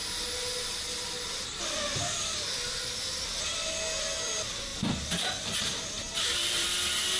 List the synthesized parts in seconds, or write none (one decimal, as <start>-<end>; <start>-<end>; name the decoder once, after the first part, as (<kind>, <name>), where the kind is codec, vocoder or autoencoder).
none